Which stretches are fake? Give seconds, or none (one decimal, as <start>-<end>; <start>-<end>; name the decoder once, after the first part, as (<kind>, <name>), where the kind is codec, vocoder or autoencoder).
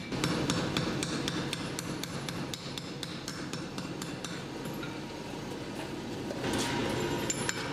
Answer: 3.3-5.4 (vocoder, BigVGAN v2)